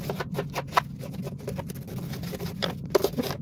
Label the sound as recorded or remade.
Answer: recorded